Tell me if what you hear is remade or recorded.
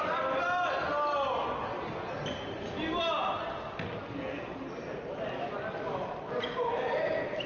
recorded